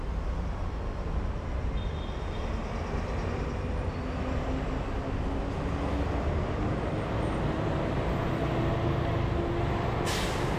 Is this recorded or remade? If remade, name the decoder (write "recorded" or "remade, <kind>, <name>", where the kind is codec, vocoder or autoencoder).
recorded